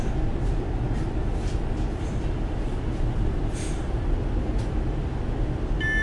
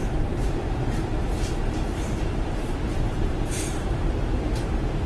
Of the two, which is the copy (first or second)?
second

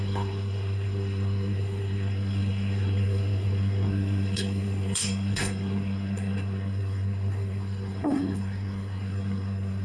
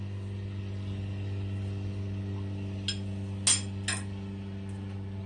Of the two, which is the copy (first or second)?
first